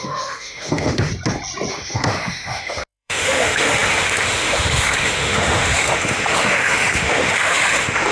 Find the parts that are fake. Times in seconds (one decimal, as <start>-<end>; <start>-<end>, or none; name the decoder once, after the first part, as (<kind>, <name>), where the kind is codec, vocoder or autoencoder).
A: 0.0-1.1 (autoencoder, DAC-VAE); 1.7-8.1